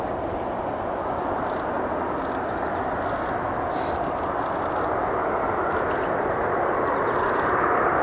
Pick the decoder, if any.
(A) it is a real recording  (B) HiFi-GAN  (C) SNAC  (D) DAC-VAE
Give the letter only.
A